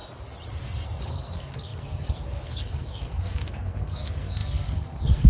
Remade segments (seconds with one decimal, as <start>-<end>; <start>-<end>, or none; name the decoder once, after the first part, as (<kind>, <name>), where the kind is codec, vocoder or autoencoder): 0.6-5.3 (codec, SNAC)